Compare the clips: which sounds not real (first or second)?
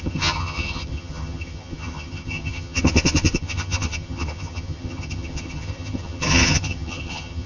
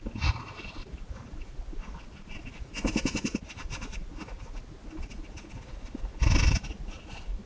first